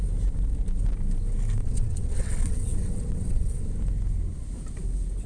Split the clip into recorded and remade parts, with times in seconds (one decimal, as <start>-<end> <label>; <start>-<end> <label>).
0.0-1.6 recorded; 1.6-3.6 remade; 3.6-5.3 recorded